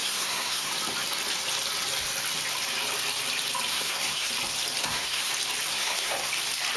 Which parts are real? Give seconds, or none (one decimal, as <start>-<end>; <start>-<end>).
0.7-3.7; 4.3-4.8; 5.3-5.7; 6.3-6.8